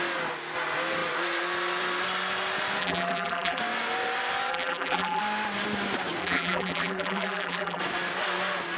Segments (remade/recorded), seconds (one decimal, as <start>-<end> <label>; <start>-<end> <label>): 0.0-2.8 recorded; 2.8-3.6 remade; 3.6-4.5 recorded; 4.5-5.2 remade; 5.2-6.2 recorded; 6.2-7.8 remade; 7.8-8.8 recorded